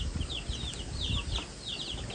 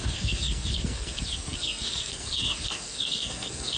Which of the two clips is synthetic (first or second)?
second